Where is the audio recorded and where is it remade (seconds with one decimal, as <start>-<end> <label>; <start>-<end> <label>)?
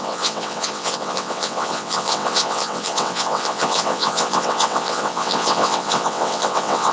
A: 0.0-6.9 remade